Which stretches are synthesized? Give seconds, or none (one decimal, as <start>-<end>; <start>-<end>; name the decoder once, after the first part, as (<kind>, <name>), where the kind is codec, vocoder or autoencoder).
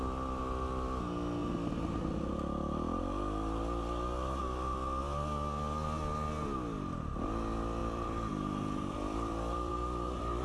7.8-9.7 (vocoder, BigVGAN v2)